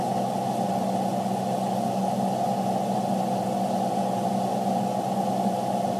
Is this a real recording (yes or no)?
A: yes